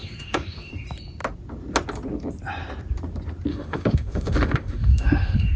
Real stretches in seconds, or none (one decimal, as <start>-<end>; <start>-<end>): 0.7-3.5